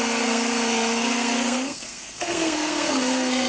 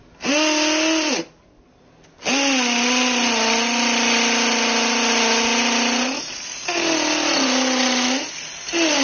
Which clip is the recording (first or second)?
second